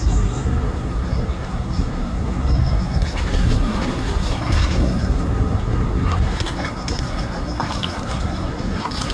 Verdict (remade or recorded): remade